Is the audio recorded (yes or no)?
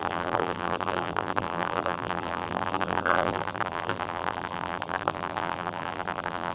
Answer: no